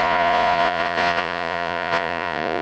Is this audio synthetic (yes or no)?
yes